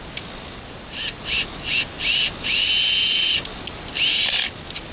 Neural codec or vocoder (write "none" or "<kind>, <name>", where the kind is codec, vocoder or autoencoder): none